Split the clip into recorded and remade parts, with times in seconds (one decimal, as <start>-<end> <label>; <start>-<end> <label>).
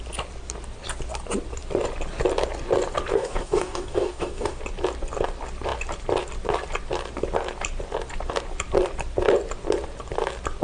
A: 0.0-3.1 recorded; 3.1-4.6 remade; 4.6-10.6 recorded